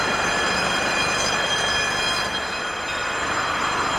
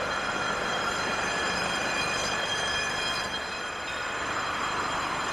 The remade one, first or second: second